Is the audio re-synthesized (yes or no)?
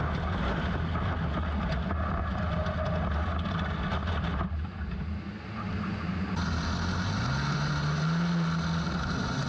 no